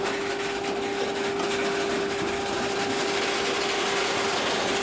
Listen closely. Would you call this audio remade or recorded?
recorded